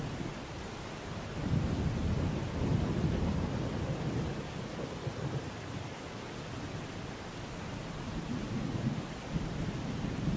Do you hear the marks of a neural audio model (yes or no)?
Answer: no